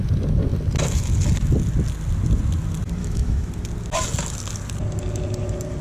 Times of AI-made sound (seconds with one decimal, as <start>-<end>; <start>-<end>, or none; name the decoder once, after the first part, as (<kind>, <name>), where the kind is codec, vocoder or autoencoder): 3.0-3.5 (autoencoder, DAC-VAE)